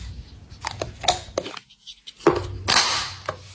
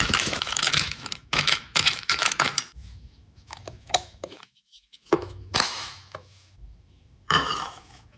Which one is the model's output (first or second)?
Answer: second